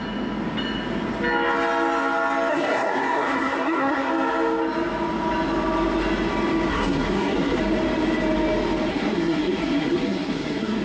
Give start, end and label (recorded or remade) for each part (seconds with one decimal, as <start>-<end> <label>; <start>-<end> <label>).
0.0-2.5 recorded; 2.5-4.1 remade; 4.1-6.7 recorded; 6.7-7.6 remade; 7.6-8.9 recorded; 8.9-10.8 remade